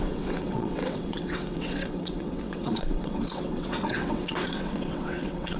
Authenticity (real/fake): fake